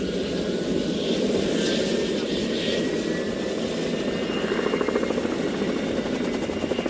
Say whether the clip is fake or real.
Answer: real